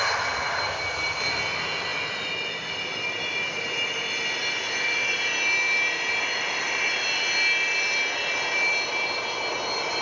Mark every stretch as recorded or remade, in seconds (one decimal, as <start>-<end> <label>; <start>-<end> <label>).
0.0-10.0 recorded